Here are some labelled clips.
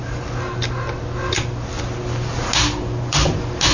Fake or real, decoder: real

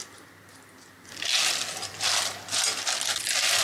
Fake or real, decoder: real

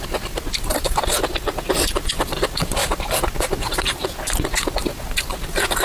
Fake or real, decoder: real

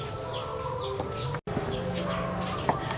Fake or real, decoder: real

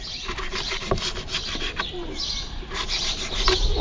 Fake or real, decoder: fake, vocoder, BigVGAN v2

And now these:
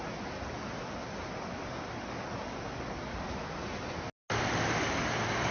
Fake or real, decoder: real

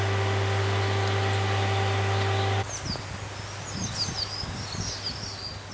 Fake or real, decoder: real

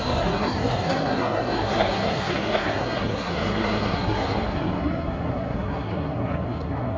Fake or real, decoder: fake, codec, SNAC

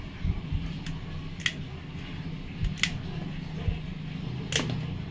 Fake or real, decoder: real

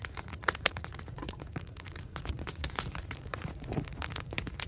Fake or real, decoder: fake, vocoder, Vocos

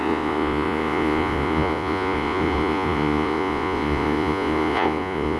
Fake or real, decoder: fake, vocoder, Vocos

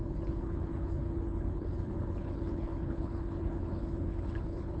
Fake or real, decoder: fake, codec, HILCodec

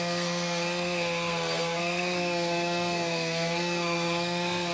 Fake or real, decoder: fake, codec, SNAC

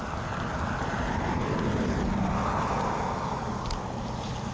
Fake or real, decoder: real